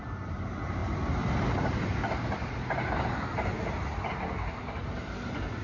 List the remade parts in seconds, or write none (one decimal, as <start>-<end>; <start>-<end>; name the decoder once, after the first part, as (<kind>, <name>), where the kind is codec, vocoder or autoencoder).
none